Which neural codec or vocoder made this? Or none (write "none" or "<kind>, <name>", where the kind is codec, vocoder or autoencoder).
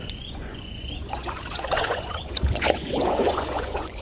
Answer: vocoder, Vocos